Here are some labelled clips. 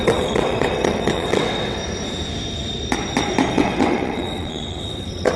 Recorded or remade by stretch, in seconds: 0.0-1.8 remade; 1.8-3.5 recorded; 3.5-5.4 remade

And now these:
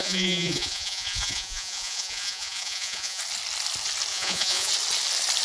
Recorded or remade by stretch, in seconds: 0.0-3.2 remade; 3.2-4.1 recorded; 4.1-4.7 remade; 4.7-5.4 recorded

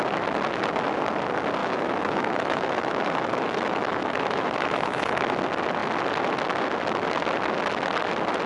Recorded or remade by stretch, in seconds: 0.0-1.6 recorded; 1.6-5.3 remade; 5.3-8.5 recorded